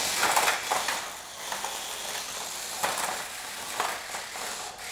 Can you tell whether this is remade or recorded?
recorded